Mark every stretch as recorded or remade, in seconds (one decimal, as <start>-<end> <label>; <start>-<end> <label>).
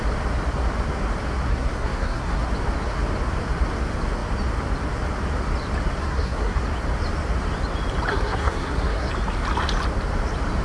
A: 0.0-1.5 recorded; 1.5-2.5 remade; 2.5-6.0 recorded; 6.0-6.6 remade; 6.6-8.1 recorded; 8.1-9.1 remade; 9.1-10.6 recorded